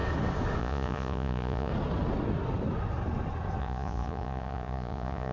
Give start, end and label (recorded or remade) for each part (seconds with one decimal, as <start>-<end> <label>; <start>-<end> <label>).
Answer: 0.0-0.6 recorded; 0.6-1.7 remade; 1.7-3.6 recorded; 3.6-5.3 remade

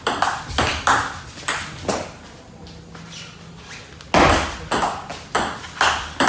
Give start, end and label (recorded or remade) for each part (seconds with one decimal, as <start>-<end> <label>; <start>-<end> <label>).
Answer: 0.0-6.3 recorded

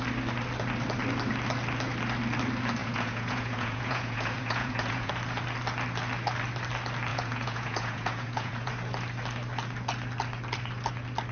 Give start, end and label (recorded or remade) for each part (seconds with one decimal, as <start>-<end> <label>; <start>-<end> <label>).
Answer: 0.0-2.8 recorded; 2.8-5.1 remade; 5.1-7.1 recorded; 7.1-8.7 remade; 8.7-11.3 recorded

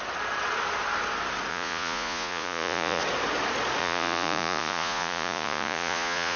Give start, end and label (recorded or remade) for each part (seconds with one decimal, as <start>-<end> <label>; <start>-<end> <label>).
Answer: 0.0-1.5 recorded; 1.5-3.0 remade; 3.0-3.8 recorded; 3.8-6.4 remade

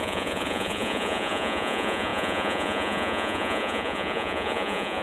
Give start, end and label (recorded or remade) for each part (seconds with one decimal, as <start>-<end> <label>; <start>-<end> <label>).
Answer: 0.0-5.0 remade

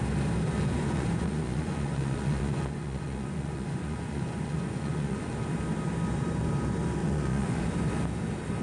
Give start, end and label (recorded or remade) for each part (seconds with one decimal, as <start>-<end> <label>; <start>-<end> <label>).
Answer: 0.0-0.8 recorded; 0.8-5.3 remade; 5.3-7.0 recorded; 7.0-7.6 remade; 7.6-8.6 recorded